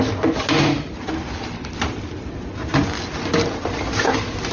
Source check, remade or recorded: recorded